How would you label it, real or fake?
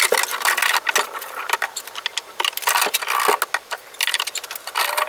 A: real